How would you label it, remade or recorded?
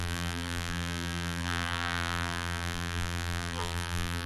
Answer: remade